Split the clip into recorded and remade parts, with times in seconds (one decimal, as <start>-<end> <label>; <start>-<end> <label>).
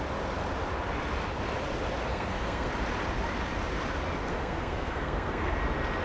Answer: 0.0-2.1 recorded; 2.1-2.7 remade; 2.7-4.3 recorded; 4.3-5.5 remade; 5.5-6.0 recorded